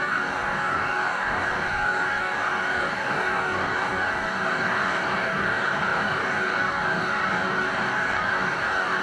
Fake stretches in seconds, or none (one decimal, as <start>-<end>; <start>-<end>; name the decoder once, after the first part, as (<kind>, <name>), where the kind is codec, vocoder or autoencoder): 0.0-9.0 (codec, DAC)